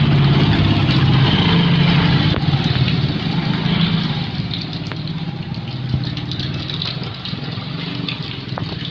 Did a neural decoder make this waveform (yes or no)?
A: no